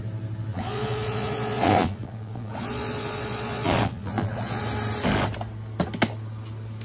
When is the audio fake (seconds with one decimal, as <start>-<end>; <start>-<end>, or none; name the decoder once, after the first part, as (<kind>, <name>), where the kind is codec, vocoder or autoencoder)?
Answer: 0.5-4.6 (vocoder, Vocos)